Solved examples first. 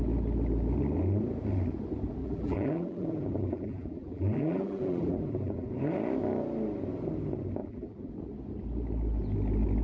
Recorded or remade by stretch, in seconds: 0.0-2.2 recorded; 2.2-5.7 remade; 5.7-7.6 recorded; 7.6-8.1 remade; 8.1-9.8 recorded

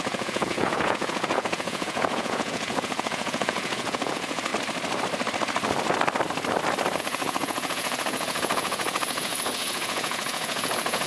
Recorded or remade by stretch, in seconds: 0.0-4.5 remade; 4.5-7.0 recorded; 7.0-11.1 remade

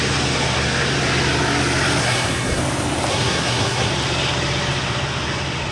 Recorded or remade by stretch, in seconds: 0.0-2.0 recorded; 2.0-2.6 remade; 2.6-3.1 recorded; 3.1-3.9 remade; 3.9-5.7 recorded